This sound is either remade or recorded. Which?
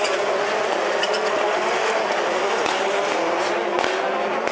recorded